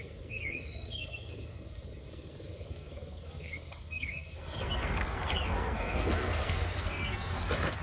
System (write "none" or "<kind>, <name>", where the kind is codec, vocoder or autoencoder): codec, SNAC